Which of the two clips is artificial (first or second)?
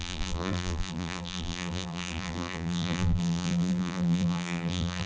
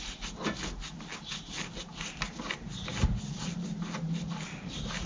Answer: first